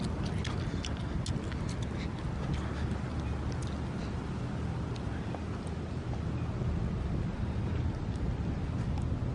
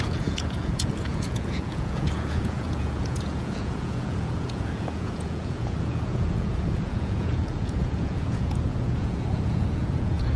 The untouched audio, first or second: first